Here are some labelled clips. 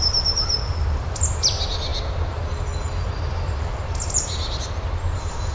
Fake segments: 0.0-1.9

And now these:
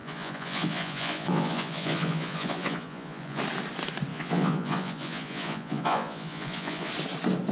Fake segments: 0.0-3.4; 4.1-6.9

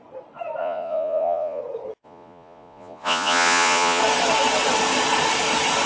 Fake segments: 0.6-1.6; 2.0-4.0

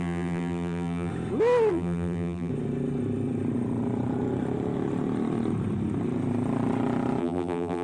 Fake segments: 0.0-1.1; 1.7-2.5; 7.2-7.8

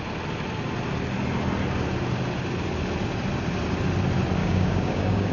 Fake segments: 4.4-5.3

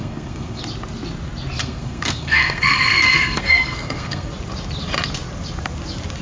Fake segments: 0.0-0.6; 1.6-4.3